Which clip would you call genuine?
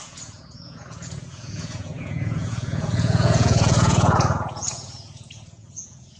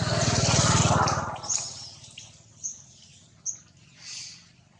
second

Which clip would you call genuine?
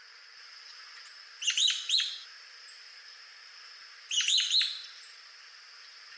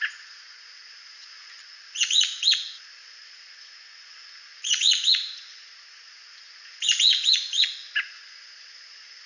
first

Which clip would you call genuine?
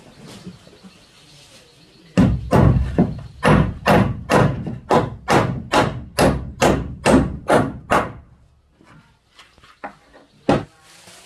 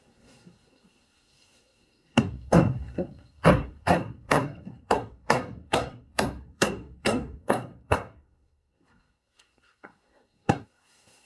first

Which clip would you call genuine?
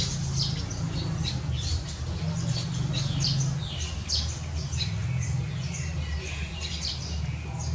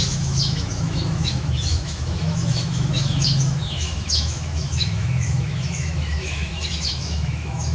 first